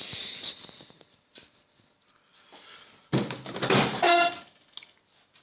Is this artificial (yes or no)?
no